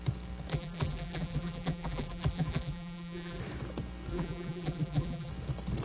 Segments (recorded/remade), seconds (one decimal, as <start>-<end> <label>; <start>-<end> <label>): 0.0-0.5 recorded; 0.5-3.4 remade; 3.4-4.1 recorded; 4.1-5.3 remade; 5.3-5.8 recorded